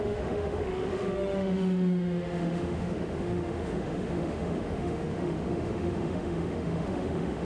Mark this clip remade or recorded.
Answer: remade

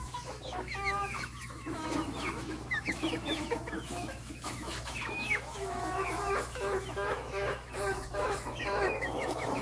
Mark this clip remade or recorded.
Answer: remade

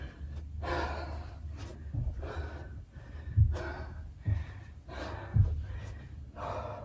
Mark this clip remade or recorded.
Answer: recorded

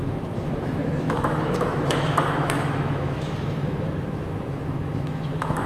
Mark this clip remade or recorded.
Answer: remade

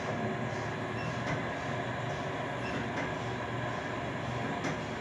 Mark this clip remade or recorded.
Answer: recorded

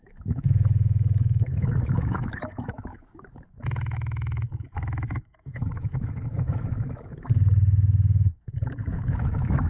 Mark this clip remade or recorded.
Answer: remade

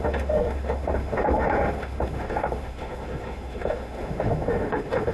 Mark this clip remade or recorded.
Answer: remade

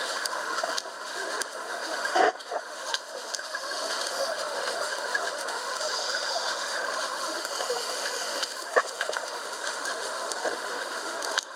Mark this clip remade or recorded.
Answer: remade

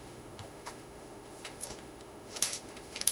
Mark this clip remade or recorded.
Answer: remade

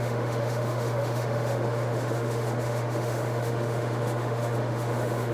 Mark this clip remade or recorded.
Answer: remade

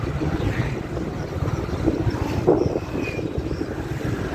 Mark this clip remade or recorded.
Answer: recorded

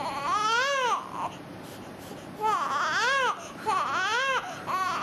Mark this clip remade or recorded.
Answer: recorded